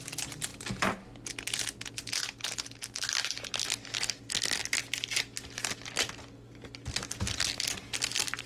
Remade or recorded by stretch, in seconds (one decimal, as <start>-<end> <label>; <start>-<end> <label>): 0.0-8.5 recorded